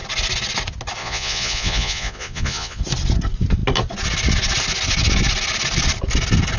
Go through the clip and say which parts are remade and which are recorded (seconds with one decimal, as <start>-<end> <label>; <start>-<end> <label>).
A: 0.0-1.0 recorded; 1.0-2.8 remade; 2.8-6.6 recorded